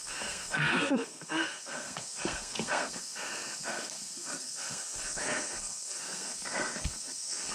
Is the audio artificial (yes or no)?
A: yes